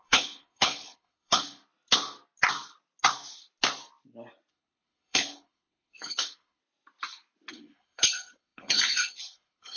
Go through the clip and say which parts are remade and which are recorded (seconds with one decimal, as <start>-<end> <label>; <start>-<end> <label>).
0.0-1.6 remade; 1.6-4.5 recorded; 4.5-6.6 remade; 6.6-7.5 recorded; 7.5-9.8 remade